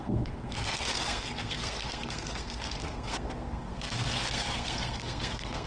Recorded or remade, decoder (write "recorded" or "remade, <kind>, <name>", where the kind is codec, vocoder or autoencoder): remade, codec, SNAC